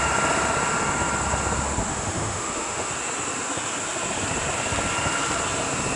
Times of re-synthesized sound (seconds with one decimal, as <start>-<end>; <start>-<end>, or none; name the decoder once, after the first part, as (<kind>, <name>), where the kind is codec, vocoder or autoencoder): 1.9-2.9 (autoencoder, DAC-VAE)